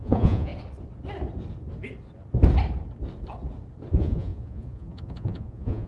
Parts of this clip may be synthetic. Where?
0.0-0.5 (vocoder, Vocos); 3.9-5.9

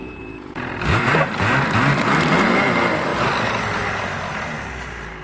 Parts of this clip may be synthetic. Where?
0.0-0.7 (vocoder, Vocos)

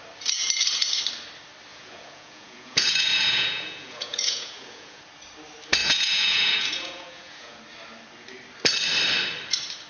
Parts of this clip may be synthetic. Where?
1.7-5.0 (vocoder, Vocos); 5.8-7.6